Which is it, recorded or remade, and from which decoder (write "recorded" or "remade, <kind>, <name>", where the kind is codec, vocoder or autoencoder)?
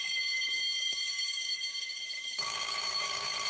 remade, codec, DAC